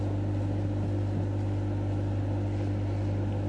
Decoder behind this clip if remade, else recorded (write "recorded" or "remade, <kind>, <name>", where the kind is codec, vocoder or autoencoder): recorded